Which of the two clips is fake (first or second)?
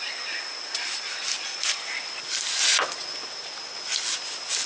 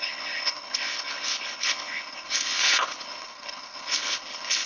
second